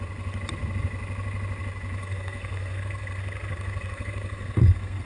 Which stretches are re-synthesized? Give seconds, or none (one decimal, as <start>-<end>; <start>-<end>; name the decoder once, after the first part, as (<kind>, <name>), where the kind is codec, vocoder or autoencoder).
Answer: 2.0-5.1 (codec, SNAC)